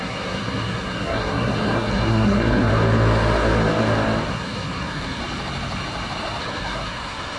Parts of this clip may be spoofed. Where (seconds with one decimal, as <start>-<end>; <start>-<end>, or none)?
0.0-2.7; 4.3-5.2; 6.4-7.4